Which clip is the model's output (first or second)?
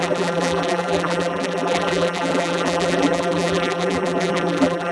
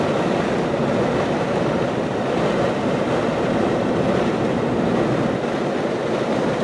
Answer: first